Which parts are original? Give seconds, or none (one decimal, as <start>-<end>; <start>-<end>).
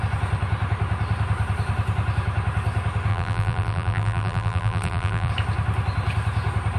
0.0-3.1; 5.3-6.8